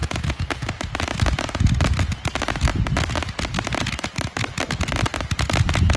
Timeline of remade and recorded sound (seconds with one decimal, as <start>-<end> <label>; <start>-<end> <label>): 0.0-6.0 recorded